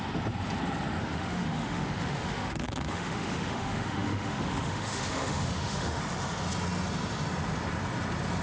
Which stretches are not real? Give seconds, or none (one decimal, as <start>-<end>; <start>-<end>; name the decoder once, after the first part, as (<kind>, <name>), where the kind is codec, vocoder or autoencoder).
1.0-6.0 (autoencoder, DAC-VAE)